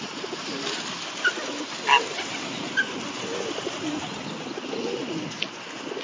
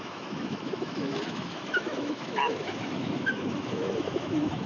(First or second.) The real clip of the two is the first